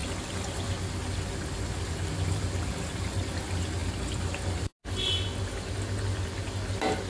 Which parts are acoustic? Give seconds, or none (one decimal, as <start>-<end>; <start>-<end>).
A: 0.0-7.1